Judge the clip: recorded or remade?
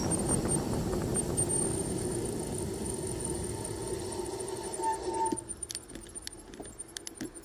recorded